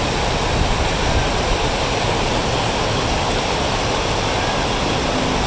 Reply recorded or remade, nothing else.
recorded